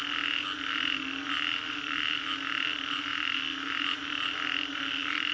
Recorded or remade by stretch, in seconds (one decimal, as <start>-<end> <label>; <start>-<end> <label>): 0.0-5.3 recorded